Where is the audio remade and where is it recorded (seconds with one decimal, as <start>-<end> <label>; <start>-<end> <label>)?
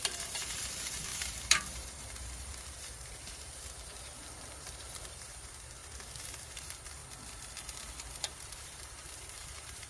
0.0-5.8 remade; 5.8-6.4 recorded; 6.4-7.0 remade; 7.0-8.2 recorded; 8.2-9.9 remade